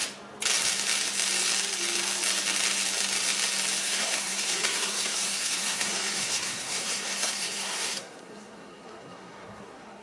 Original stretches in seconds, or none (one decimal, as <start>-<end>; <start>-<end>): 0.0-3.8